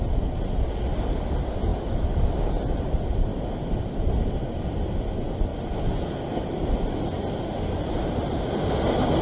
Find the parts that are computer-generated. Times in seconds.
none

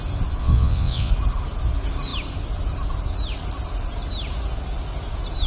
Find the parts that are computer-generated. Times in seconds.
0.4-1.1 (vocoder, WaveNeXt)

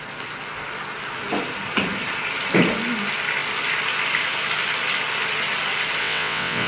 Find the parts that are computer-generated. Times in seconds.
6.0-6.7 (vocoder, WaveNeXt)

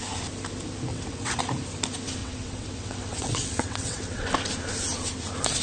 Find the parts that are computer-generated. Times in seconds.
0.9-1.4 (vocoder, WaveNeXt); 2.2-4.3

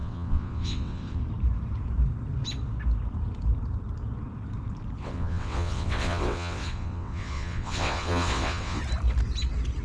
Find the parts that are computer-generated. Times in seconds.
0.0-1.2 (vocoder, WaveNeXt); 5.0-8.8

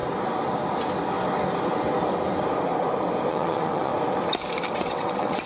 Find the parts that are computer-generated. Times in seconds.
3.3-3.9 (vocoder, WaveNeXt); 4.8-5.5

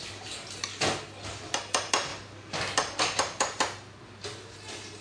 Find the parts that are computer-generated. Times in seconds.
none

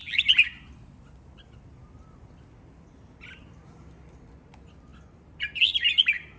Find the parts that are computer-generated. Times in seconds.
none